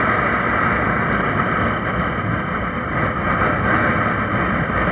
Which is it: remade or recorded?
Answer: recorded